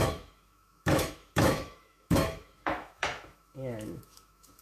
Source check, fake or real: fake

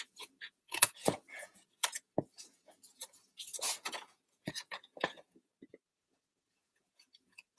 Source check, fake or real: fake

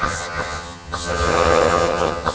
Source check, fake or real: fake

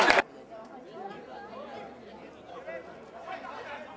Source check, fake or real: real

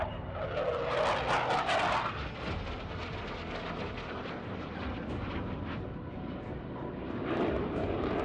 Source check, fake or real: real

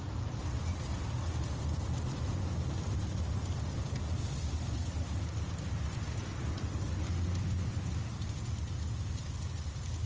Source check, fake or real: fake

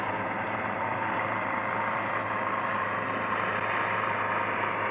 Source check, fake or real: real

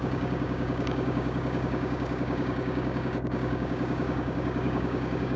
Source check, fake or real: fake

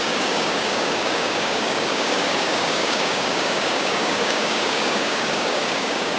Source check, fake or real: fake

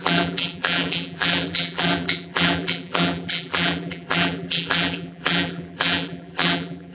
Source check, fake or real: fake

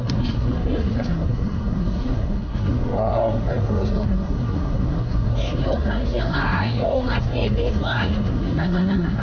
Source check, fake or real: fake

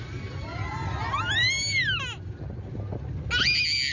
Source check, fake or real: real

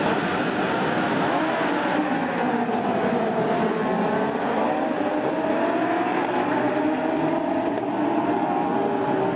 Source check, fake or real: real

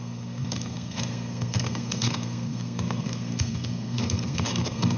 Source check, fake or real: fake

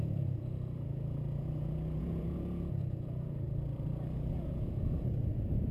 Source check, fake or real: fake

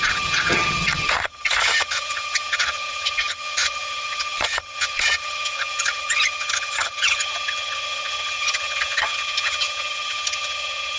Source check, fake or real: fake